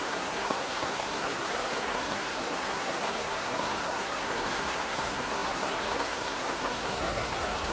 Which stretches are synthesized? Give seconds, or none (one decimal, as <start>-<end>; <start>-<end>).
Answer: 0.0-7.7